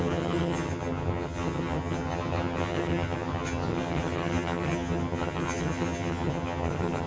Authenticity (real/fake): fake